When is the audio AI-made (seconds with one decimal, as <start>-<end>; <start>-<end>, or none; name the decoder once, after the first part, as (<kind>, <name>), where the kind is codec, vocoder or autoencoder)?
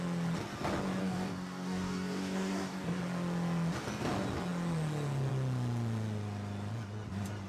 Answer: 1.0-3.0 (codec, DAC)